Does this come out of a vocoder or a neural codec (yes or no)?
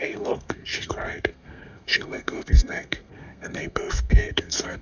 yes